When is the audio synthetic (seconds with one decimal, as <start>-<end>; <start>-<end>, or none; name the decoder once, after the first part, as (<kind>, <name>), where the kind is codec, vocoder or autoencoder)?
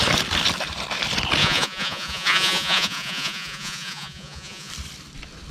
1.4-4.7 (vocoder, Vocos)